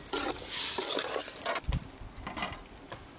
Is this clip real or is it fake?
real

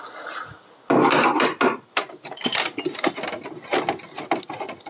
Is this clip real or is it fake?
real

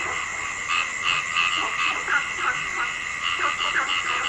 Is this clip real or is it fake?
real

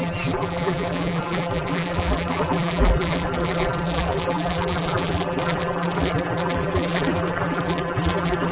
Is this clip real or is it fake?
fake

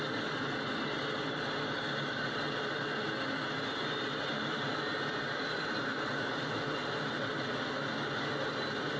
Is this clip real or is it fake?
real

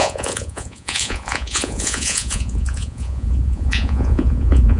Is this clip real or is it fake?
fake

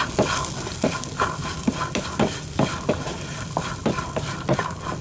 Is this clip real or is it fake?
real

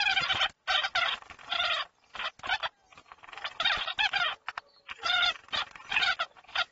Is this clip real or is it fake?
real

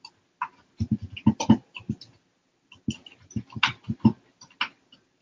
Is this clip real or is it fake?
real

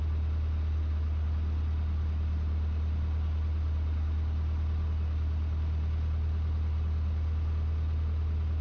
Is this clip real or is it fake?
real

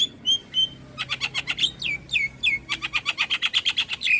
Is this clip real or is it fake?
real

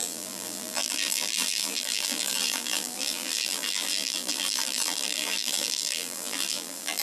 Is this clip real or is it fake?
fake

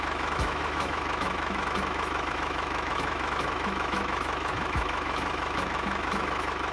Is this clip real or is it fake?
fake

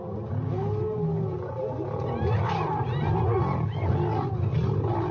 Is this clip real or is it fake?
real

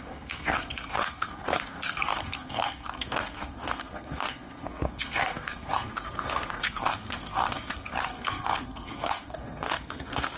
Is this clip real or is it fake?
fake